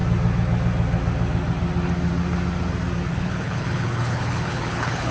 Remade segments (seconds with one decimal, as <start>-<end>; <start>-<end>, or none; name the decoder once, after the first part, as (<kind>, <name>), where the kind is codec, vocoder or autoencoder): 3.1-5.1 (codec, HILCodec)

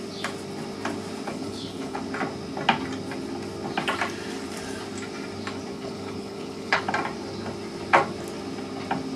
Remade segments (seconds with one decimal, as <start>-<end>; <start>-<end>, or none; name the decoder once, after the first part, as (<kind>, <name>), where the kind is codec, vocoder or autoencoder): 1.3-2.0 (codec, HILCodec); 5.7-6.8

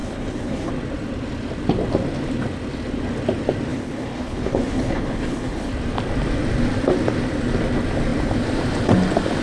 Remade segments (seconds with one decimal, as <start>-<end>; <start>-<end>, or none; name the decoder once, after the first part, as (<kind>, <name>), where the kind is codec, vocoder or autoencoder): 0.0-0.7 (codec, HILCodec); 3.7-5.7

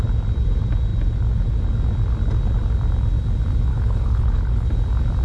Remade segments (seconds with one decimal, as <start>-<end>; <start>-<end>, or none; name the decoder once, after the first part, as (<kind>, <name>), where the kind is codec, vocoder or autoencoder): 3.7-4.7 (codec, HILCodec)

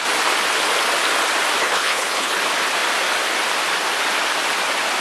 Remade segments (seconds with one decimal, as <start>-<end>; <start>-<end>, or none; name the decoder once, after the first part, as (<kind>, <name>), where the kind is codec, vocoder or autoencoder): 1.6-2.4 (codec, HILCodec)